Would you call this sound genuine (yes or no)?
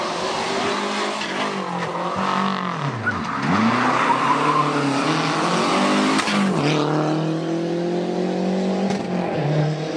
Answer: yes